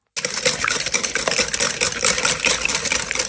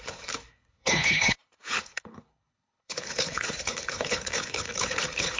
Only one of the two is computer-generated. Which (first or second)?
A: second